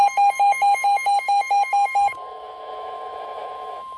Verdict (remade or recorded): remade